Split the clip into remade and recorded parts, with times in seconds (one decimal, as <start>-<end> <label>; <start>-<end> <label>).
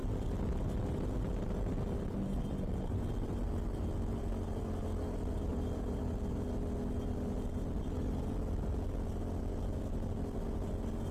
0.0-5.5 recorded; 5.5-6.0 remade; 6.0-11.1 recorded